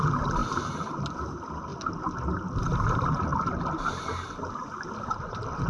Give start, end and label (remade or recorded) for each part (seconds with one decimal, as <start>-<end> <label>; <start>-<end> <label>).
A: 0.0-5.7 recorded